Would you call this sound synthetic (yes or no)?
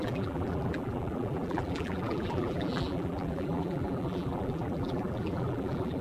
yes